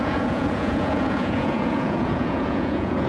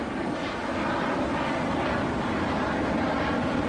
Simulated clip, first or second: first